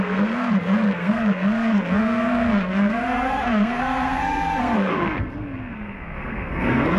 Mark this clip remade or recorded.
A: remade